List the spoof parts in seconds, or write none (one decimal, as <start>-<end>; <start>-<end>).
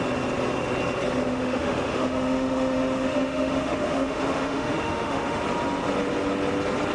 1.3-5.4